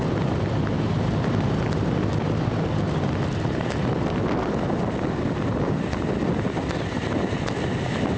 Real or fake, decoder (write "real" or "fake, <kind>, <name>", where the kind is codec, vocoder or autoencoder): real